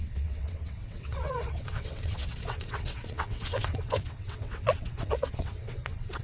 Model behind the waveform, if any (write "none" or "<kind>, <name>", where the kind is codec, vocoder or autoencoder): vocoder, WaveNeXt